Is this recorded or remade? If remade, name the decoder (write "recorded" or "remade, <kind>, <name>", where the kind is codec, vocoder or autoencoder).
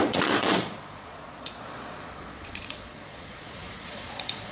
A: remade, vocoder, Vocos